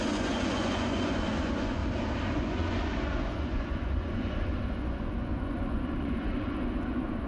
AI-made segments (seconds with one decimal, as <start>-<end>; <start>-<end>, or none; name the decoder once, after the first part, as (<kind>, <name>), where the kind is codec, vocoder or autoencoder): 0.0-1.8 (vocoder, Vocos); 2.3-7.3